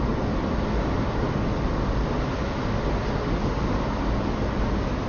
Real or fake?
real